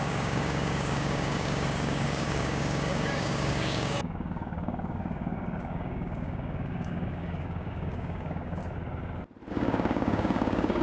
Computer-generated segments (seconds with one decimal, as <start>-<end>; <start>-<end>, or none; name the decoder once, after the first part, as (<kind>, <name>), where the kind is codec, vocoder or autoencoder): 0.0-8.6 (codec, DAC); 9.5-10.8